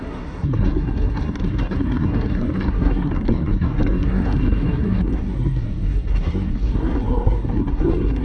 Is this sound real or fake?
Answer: fake